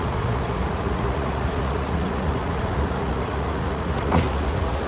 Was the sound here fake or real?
fake